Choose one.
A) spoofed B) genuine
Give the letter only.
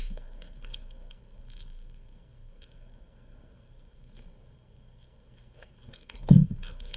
A